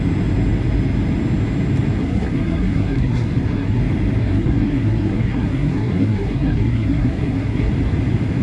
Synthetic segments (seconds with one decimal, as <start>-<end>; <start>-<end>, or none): 2.0-3.8; 4.2-7.7